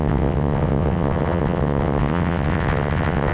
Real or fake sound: fake